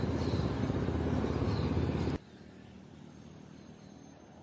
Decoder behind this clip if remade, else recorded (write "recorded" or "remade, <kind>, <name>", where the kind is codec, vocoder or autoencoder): recorded